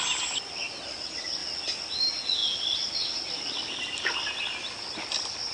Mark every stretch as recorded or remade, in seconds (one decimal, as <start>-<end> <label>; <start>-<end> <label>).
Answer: 0.0-5.5 recorded

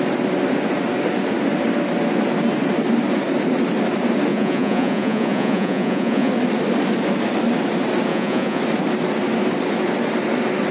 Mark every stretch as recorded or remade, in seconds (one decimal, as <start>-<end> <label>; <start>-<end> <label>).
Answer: 0.0-4.3 recorded; 4.3-6.3 remade; 6.3-8.1 recorded; 8.1-8.6 remade; 8.6-10.7 recorded

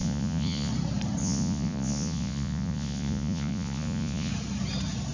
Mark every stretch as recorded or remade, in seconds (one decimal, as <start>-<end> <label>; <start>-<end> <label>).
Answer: 0.0-0.7 remade; 0.7-1.2 recorded; 1.2-4.3 remade; 4.3-5.1 recorded

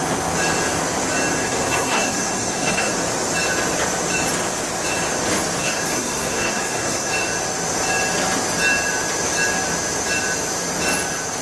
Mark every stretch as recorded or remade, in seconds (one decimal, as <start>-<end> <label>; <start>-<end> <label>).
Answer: 0.0-1.4 recorded; 1.4-2.9 remade; 2.9-5.6 recorded; 5.6-7.1 remade; 7.1-11.4 recorded

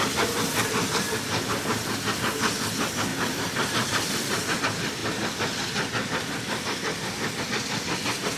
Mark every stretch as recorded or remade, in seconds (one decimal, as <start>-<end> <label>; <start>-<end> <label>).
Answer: 0.0-3.1 recorded; 3.1-4.6 remade; 4.6-8.4 recorded

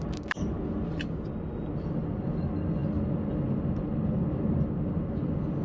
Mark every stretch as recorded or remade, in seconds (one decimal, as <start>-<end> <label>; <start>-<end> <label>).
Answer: 0.0-5.6 recorded